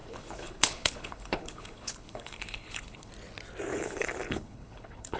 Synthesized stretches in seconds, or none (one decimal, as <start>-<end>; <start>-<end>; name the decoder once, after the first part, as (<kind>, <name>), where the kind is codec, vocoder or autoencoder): 0.0-3.1 (codec, HILCodec); 3.7-5.2